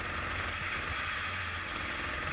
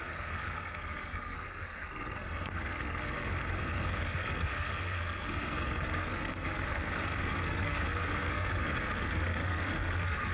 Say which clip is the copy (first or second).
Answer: second